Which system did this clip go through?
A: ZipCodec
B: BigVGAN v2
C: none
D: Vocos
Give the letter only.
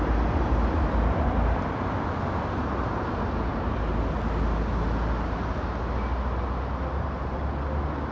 C